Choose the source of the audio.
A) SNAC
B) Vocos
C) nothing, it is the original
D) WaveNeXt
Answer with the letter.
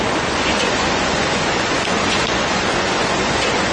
B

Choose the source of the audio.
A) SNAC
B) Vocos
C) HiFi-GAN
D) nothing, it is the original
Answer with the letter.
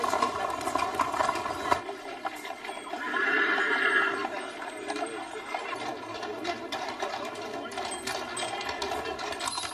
D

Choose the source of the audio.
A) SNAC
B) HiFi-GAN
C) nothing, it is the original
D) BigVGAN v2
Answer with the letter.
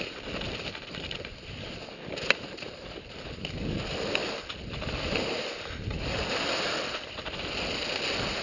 D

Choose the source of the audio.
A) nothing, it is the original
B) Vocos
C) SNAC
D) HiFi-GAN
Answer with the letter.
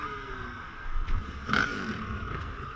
C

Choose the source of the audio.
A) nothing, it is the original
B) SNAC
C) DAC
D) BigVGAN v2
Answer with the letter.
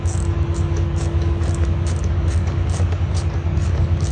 C